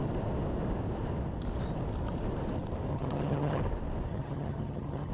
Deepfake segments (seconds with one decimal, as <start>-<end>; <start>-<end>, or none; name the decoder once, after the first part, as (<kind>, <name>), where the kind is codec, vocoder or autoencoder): 2.9-3.6 (vocoder, HiFi-GAN); 4.1-5.1